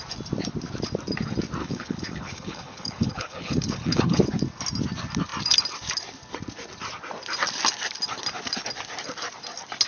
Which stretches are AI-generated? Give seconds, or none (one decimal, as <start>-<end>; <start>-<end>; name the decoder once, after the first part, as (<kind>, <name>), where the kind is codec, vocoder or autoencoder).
1.6-4.2 (codec, HILCodec)